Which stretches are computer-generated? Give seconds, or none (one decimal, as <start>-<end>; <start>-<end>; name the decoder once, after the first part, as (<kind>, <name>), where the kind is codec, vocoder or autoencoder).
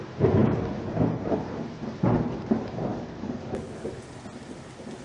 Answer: 2.9-3.9 (codec, DAC)